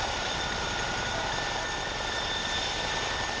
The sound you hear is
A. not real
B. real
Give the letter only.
A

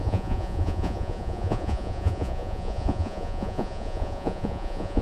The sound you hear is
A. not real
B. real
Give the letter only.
A